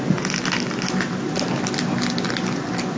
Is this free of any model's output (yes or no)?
yes